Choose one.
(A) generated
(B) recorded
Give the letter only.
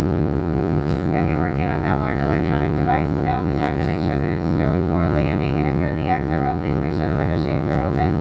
A